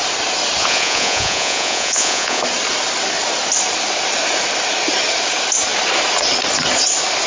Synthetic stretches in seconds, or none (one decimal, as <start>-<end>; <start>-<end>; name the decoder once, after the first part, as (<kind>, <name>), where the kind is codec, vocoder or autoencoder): 0.6-2.4 (vocoder, Vocos)